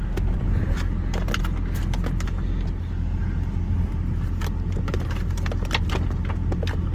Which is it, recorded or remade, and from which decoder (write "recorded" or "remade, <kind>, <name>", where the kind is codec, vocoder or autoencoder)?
recorded